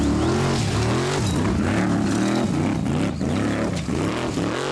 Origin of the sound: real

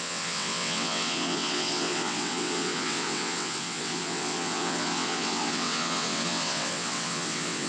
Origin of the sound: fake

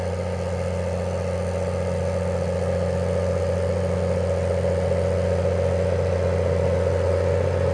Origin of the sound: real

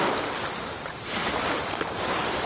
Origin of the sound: real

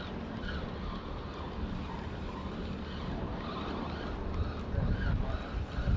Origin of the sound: real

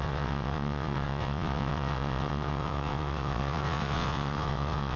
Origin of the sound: fake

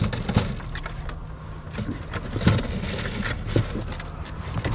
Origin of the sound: real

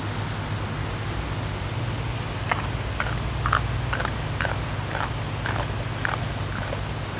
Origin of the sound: real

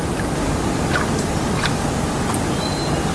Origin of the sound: real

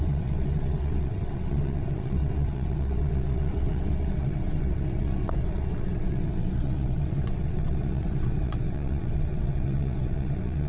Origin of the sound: fake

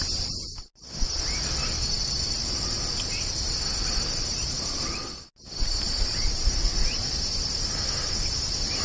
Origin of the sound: real